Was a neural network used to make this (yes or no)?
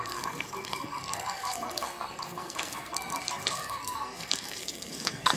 yes